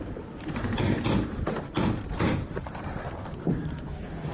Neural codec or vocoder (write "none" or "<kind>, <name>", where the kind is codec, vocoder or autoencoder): vocoder, BigVGAN v2